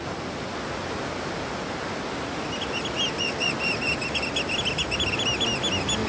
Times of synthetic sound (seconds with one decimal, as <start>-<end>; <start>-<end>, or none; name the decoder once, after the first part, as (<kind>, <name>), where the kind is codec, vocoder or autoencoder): none